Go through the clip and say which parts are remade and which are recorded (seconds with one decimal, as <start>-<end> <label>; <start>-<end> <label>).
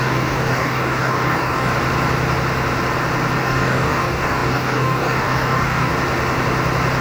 0.0-1.7 remade; 1.7-3.4 recorded; 3.4-5.9 remade; 5.9-7.0 recorded